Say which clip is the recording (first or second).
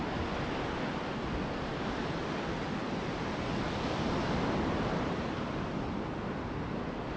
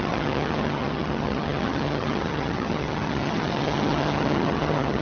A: first